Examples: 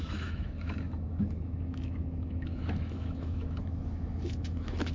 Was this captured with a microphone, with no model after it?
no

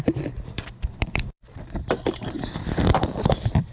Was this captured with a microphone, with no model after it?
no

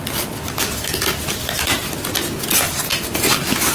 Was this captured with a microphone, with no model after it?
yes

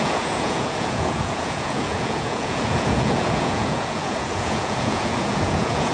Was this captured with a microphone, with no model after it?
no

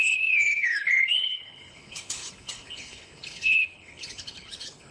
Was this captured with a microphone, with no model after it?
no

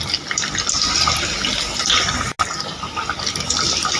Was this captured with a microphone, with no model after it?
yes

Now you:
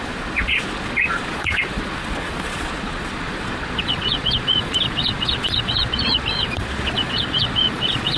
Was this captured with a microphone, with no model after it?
no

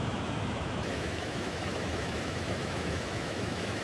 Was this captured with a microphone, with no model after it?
no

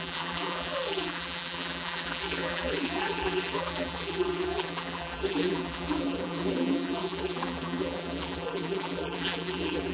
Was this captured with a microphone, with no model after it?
no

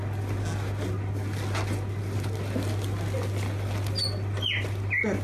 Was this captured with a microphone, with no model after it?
yes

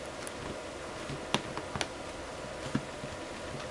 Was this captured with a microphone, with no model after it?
yes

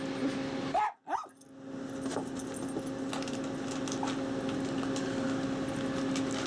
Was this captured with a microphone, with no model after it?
yes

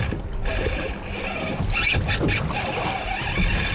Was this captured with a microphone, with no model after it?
yes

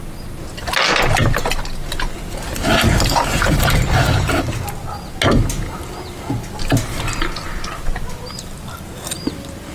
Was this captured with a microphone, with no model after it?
yes